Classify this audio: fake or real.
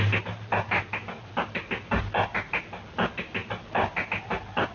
real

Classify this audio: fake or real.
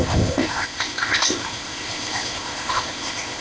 fake